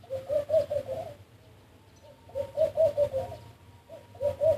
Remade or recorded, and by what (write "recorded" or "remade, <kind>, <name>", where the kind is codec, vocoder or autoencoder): recorded